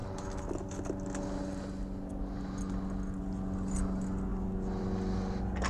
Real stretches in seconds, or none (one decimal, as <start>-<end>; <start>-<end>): 0.0-5.7